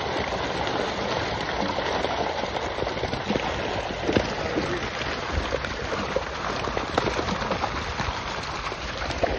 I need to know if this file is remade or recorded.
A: recorded